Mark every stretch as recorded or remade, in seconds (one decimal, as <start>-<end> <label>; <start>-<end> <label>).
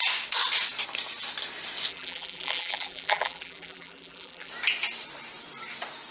0.0-1.9 recorded; 1.9-4.5 remade; 4.5-6.1 recorded